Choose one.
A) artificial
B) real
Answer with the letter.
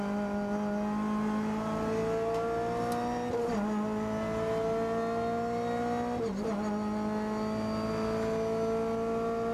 B